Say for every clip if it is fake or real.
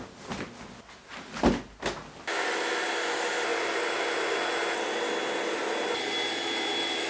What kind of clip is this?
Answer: real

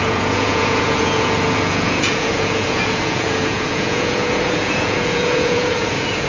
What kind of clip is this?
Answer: fake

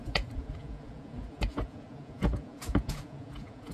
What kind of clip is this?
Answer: fake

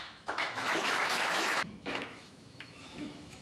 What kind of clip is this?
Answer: fake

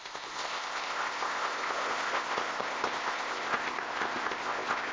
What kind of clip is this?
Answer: fake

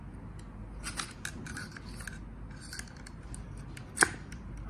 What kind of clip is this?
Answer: real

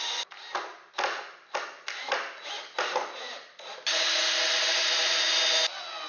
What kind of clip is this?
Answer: real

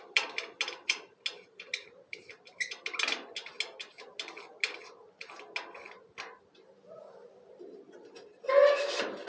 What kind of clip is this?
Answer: real